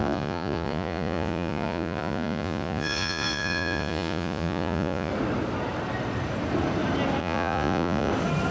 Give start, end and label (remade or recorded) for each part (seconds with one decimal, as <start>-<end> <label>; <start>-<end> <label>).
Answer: 0.0-5.1 remade; 5.1-7.2 recorded; 7.2-8.1 remade; 8.1-8.5 recorded